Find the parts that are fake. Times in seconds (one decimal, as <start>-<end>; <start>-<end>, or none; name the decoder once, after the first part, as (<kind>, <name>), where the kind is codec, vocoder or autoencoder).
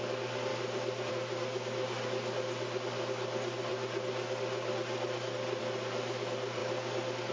none